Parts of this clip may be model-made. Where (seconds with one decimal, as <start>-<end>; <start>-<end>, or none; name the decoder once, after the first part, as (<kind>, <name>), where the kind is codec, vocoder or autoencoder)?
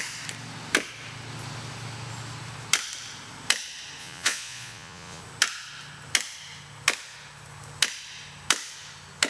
4.0-5.2 (vocoder, Vocos)